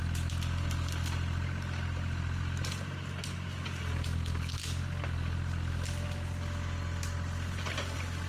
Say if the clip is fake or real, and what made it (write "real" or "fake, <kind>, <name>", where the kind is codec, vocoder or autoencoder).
real